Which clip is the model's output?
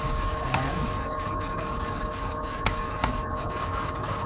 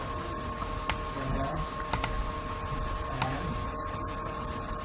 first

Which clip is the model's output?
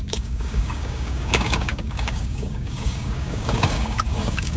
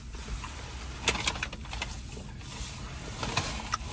first